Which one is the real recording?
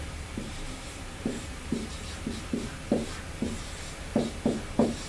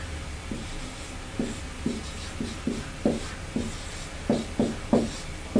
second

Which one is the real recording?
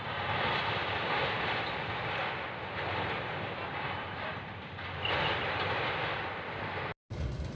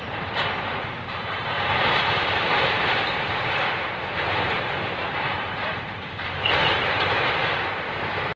first